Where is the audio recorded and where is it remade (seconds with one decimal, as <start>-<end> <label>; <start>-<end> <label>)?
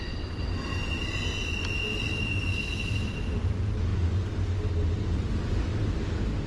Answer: 0.0-6.5 recorded